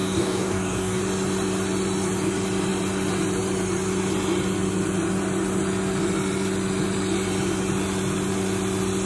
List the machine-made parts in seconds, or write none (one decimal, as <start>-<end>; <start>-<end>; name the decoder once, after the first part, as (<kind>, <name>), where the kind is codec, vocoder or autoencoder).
0.0-1.0 (codec, DAC)